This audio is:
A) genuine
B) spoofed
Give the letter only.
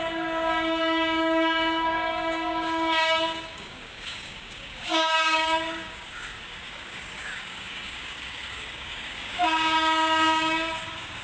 B